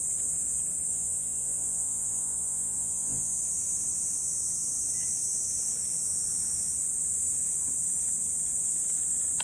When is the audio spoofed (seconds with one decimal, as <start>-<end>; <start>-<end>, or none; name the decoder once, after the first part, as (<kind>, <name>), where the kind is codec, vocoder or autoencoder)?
0.9-3.4 (vocoder, Vocos)